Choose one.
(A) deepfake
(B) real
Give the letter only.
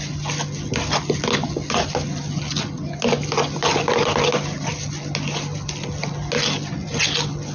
B